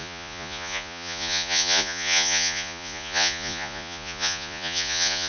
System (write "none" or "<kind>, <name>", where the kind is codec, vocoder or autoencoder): vocoder, Vocos